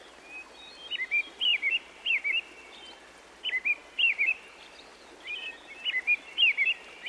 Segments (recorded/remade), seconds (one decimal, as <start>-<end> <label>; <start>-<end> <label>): 0.0-1.5 recorded; 1.5-2.1 remade; 2.1-3.8 recorded; 3.8-4.3 remade; 4.3-7.1 recorded